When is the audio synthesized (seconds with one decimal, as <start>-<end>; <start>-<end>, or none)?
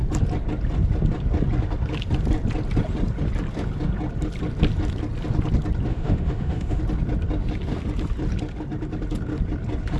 5.9-6.8